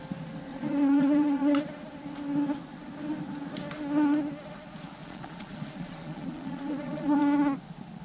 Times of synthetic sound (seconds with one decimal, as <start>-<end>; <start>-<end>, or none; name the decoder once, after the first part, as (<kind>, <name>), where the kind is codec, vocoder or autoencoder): 0.5-1.6 (vocoder, Vocos); 5.0-7.2